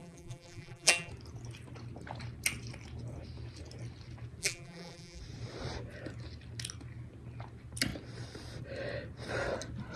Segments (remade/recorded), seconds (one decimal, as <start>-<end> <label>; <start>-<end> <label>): 0.0-1.1 remade; 1.1-4.4 recorded; 4.4-5.2 remade; 5.2-10.0 recorded